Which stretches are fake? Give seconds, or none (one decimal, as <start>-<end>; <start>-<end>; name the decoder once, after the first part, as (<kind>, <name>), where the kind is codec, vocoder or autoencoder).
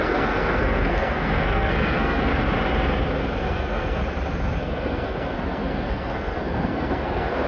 0.0-2.3 (codec, SNAC); 3.4-4.0; 4.6-7.5